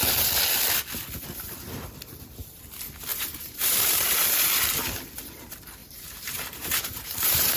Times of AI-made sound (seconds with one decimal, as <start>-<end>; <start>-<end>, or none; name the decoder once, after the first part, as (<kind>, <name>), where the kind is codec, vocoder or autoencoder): 3.1-4.7 (vocoder, BigVGAN v2); 5.8-7.6